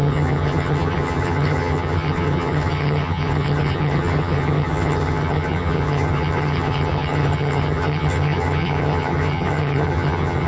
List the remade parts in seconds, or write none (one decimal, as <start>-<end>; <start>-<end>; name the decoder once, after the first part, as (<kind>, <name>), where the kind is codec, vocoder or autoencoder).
0.0-10.5 (vocoder, HiFi-GAN)